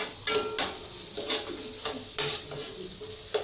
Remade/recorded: recorded